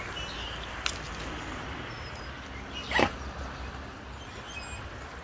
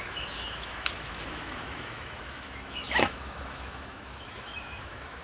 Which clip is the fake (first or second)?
second